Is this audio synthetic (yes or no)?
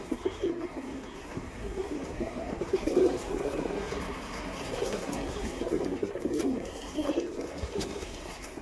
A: yes